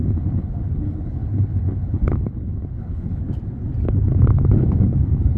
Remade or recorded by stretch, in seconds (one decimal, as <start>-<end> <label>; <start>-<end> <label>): 0.0-3.2 remade; 3.2-3.8 recorded; 3.8-5.4 remade